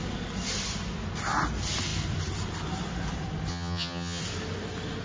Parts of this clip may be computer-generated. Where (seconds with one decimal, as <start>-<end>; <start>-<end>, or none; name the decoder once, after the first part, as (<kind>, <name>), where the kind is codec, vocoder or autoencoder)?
3.5-4.2 (vocoder, HiFi-GAN)